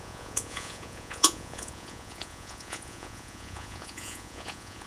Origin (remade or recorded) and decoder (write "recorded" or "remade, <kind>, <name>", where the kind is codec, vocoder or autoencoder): remade, vocoder, Vocos